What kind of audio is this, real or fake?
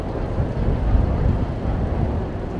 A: real